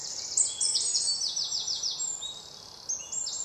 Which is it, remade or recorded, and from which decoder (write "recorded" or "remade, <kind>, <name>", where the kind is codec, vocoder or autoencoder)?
recorded